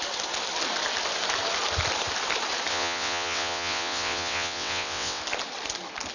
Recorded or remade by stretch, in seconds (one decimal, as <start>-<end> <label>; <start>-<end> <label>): 0.0-2.7 recorded; 2.7-5.2 remade; 5.2-6.1 recorded